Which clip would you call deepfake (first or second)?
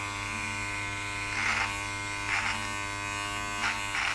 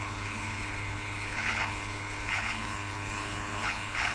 second